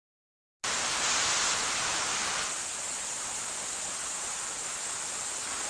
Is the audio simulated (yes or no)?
no